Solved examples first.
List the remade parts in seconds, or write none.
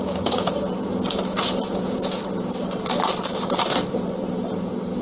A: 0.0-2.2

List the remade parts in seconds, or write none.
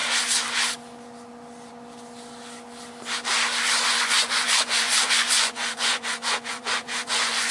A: 3.9-7.5